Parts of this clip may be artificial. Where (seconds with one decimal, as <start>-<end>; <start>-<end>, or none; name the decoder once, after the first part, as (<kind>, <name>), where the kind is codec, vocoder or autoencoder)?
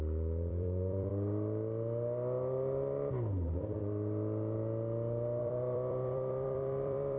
0.0-1.1 (vocoder, BigVGAN v2); 5.4-7.2